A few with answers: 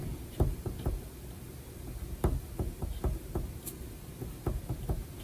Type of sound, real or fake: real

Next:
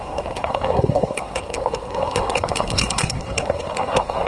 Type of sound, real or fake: fake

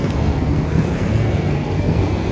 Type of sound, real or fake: fake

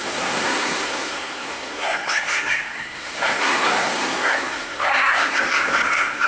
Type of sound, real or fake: fake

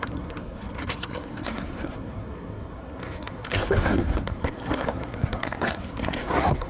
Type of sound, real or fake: fake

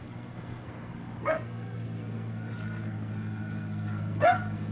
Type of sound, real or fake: fake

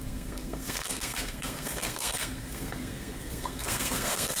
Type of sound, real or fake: fake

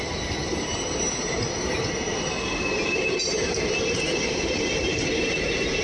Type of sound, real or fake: real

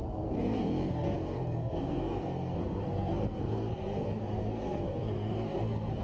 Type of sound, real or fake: fake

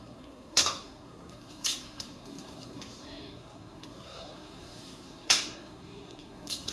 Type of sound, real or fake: fake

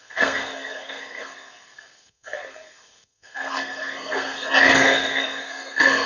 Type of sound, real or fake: fake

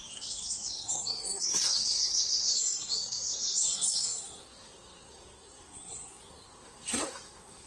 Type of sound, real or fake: fake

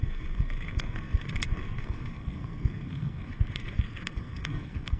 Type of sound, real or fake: fake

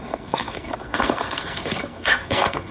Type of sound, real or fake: fake